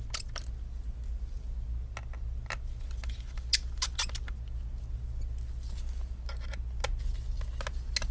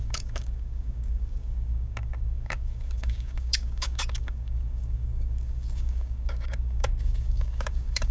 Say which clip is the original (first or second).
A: first